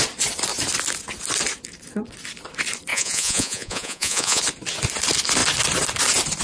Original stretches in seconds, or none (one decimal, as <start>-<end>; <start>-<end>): 0.0-2.9; 4.4-6.4